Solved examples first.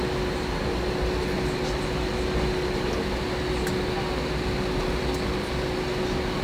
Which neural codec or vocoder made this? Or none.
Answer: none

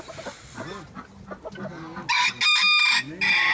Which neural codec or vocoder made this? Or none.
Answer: none